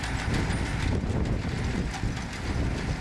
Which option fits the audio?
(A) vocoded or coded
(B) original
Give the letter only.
B